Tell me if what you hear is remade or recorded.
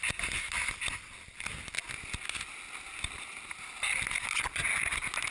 recorded